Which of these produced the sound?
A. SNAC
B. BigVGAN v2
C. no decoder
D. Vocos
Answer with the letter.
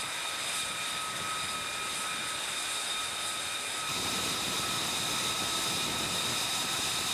C